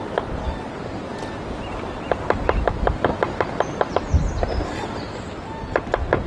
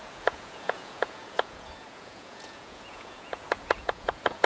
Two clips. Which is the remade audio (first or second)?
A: second